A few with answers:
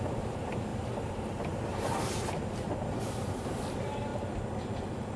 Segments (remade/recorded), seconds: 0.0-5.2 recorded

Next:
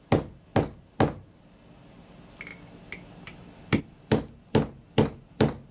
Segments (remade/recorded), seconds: 0.0-5.7 recorded